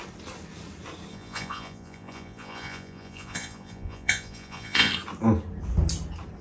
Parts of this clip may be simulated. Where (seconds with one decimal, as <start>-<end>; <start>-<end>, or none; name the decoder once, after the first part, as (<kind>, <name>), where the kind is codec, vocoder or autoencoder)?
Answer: 1.1-4.9 (vocoder, Vocos)